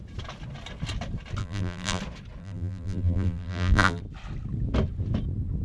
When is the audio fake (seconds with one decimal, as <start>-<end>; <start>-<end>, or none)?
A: 1.4-2.0; 2.4-4.0